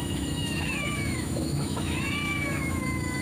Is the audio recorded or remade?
remade